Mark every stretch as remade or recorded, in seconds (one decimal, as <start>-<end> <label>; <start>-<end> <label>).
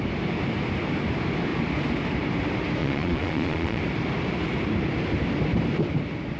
0.0-2.8 recorded; 2.8-3.8 remade; 3.8-6.4 recorded